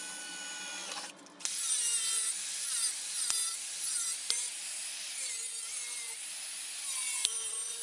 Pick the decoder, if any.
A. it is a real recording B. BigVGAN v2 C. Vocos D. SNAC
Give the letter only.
A